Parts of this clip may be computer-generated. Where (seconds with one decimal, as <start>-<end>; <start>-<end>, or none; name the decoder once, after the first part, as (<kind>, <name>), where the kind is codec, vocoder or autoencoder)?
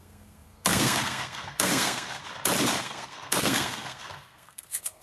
0.0-2.2 (codec, SNAC); 2.8-5.0